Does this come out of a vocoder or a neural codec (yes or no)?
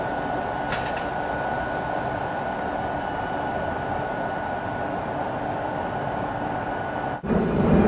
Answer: no